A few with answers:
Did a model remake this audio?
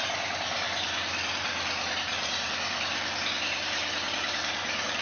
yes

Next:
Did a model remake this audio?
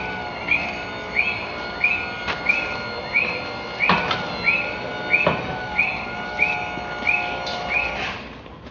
no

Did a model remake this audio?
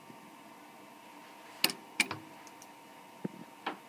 no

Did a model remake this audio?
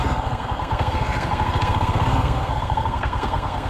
yes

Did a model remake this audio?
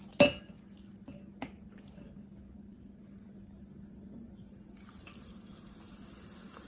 no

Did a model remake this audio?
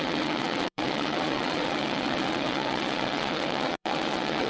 yes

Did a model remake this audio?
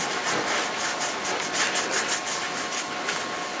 no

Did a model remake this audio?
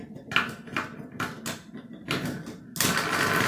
no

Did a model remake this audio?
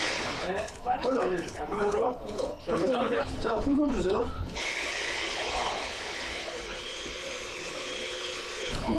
yes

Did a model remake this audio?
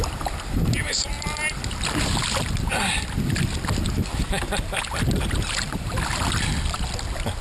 no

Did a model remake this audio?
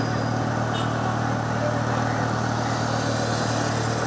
no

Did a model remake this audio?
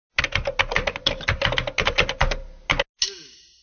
no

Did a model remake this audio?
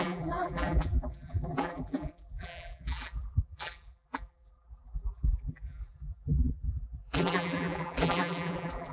yes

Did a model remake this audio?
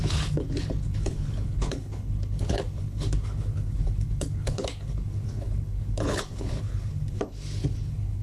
yes